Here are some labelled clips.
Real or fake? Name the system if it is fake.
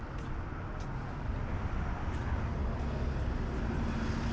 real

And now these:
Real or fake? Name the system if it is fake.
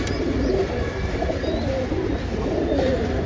real